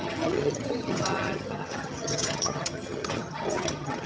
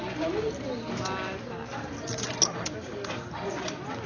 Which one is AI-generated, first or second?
first